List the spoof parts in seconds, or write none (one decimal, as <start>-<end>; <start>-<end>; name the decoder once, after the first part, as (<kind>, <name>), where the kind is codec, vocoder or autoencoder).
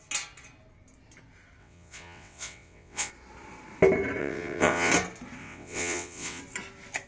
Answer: 1.6-3.1 (vocoder, WaveNeXt); 4.2-4.9; 5.4-6.4